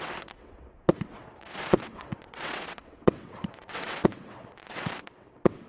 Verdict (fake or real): fake